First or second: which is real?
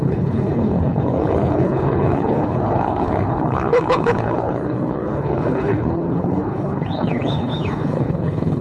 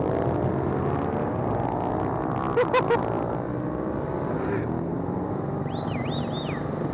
second